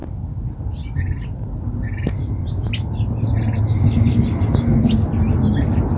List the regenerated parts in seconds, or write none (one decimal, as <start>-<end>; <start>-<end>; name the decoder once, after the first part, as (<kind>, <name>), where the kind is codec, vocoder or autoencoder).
none